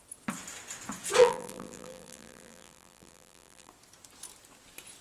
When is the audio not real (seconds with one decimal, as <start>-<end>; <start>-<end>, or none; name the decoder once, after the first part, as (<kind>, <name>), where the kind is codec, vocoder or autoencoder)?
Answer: 1.2-3.7 (vocoder, BigVGAN v2)